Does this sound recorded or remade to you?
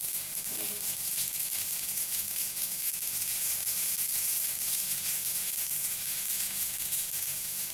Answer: remade